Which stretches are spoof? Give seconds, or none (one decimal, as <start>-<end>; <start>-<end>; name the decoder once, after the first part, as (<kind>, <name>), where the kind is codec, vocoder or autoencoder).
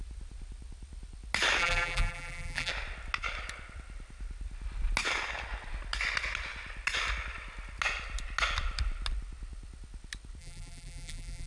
1.6-2.7 (vocoder, BigVGAN v2); 10.4-11.5